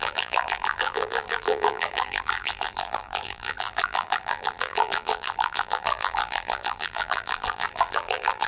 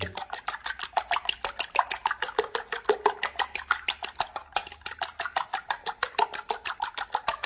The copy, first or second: first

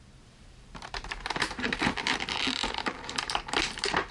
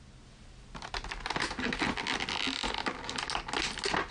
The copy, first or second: first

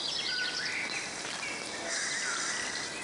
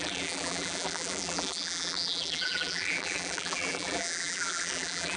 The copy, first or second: second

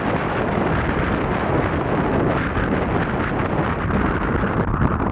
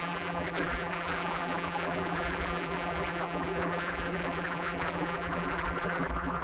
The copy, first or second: second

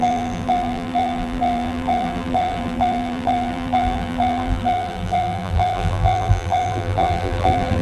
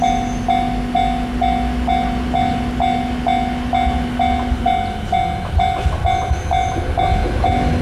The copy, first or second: first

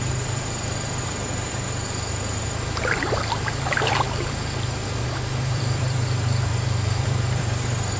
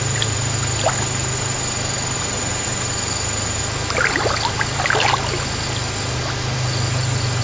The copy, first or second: first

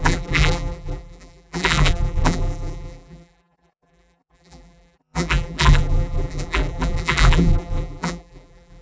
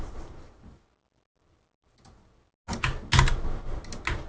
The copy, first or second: first